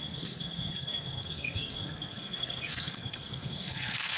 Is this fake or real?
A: fake